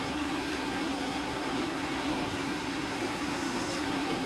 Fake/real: fake